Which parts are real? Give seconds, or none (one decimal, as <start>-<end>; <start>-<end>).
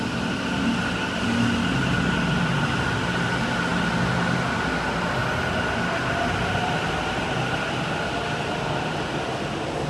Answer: 0.0-9.9